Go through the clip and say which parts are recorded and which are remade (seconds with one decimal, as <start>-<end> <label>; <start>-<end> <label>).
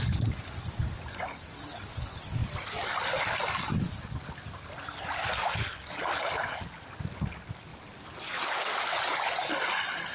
0.0-2.4 recorded; 2.4-3.0 remade; 3.0-7.7 recorded; 7.7-8.4 remade; 8.4-10.1 recorded